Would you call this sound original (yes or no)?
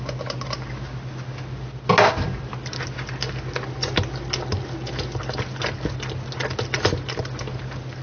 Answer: yes